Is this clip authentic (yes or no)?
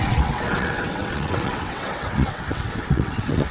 no